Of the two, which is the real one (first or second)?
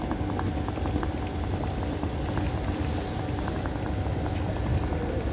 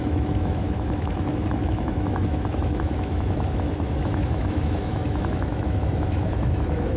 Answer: first